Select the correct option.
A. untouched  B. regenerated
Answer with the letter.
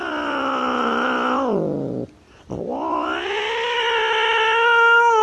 A